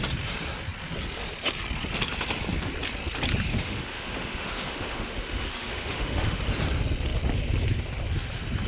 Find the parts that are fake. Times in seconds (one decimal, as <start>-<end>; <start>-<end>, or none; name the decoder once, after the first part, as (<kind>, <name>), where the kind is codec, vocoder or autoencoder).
3.5-6.4 (autoencoder, DAC-VAE)

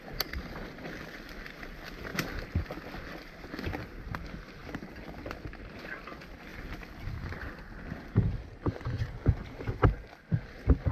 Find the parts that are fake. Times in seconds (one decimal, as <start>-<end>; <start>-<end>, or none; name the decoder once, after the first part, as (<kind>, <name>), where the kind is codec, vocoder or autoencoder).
none

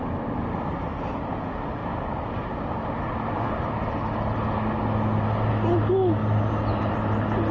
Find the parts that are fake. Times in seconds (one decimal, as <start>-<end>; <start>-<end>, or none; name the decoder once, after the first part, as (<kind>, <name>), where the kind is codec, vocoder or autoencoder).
none

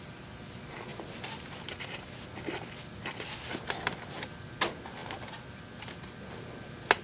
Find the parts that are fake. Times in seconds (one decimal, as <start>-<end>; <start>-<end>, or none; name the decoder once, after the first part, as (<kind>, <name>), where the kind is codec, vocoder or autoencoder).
none

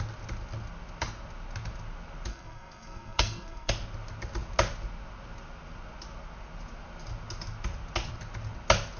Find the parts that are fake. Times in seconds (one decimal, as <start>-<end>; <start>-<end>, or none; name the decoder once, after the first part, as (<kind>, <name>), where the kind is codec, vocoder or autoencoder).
2.3-3.7 (codec, SNAC)